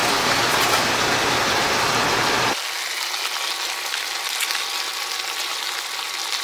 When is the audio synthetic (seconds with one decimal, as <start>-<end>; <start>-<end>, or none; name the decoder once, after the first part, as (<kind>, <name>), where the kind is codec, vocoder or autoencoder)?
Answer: none